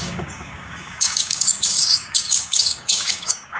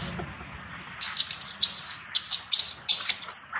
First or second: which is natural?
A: second